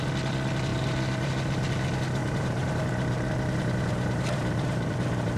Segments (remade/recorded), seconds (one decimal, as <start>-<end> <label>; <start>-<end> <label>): 0.0-0.7 recorded; 0.7-1.3 remade; 1.3-2.2 recorded; 2.2-5.4 remade